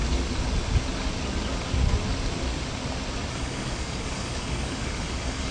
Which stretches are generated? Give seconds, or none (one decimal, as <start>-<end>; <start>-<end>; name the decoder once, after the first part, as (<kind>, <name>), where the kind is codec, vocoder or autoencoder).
3.3-5.5 (codec, DAC)